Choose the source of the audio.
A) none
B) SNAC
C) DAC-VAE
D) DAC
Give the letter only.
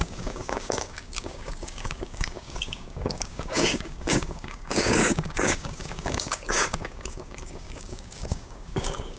D